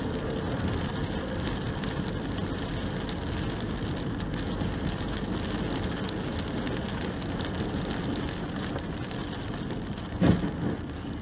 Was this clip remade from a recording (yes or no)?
no